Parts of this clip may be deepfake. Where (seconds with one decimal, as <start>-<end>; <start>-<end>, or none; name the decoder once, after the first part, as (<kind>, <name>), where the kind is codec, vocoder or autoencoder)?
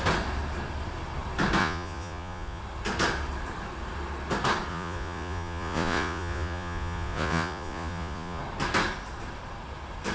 1.6-2.6 (vocoder, Vocos); 4.7-8.4